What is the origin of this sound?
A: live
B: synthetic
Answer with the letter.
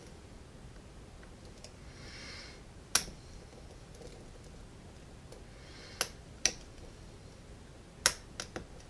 A